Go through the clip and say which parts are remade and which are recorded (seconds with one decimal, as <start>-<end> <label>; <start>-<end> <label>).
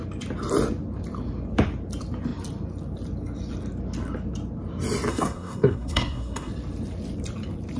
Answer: 0.0-5.1 recorded; 5.1-6.5 remade; 6.5-7.8 recorded